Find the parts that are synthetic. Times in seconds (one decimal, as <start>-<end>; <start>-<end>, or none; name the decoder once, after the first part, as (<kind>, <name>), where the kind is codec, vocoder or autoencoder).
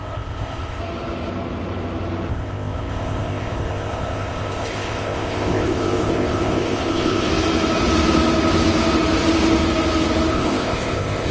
0.0-0.8 (codec, ZipCodec); 2.3-7.3; 10.3-11.3